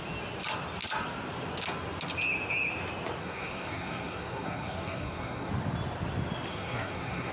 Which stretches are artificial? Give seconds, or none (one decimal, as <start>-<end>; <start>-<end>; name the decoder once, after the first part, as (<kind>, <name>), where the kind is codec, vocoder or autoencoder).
3.2-5.5 (codec, SNAC); 6.5-7.3